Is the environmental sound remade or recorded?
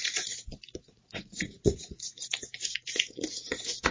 remade